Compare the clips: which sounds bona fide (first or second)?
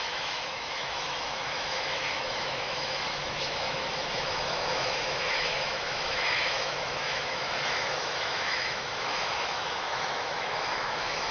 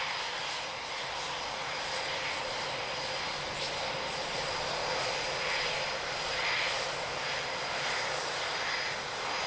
second